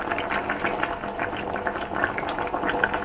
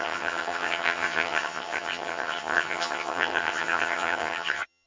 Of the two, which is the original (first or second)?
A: first